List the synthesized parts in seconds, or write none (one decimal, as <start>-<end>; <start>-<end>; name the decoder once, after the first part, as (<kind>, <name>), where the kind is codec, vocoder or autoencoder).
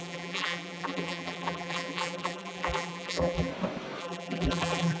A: 0.0-3.5 (vocoder, BigVGAN v2); 4.0-5.0